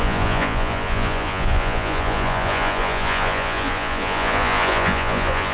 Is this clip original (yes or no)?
no